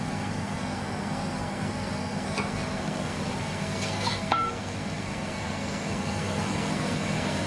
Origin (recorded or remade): remade